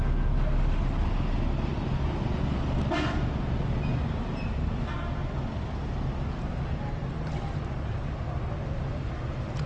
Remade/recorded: recorded